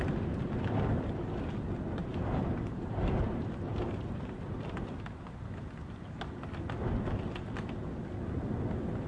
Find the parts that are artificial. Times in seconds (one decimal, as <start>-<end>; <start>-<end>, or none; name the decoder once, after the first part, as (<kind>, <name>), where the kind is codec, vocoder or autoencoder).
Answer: 2.0-6.2 (vocoder, BigVGAN v2)